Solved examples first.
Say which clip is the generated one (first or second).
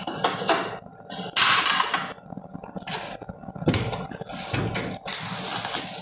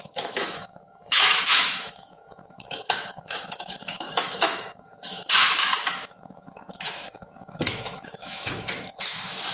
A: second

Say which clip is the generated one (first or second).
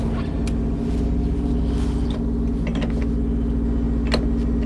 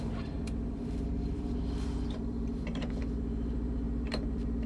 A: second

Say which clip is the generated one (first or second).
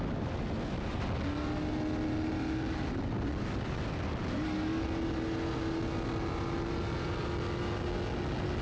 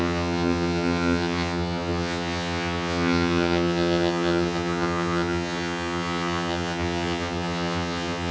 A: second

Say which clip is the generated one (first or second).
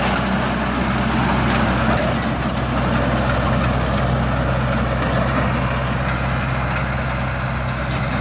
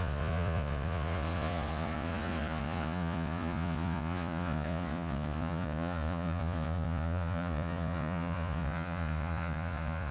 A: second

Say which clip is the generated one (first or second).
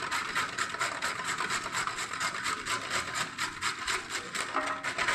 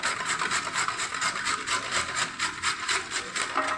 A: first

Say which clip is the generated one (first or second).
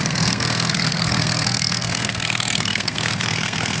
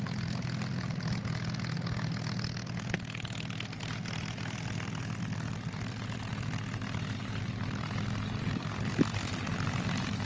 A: first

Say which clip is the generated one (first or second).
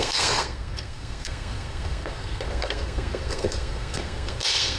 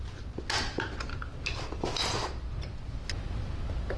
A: first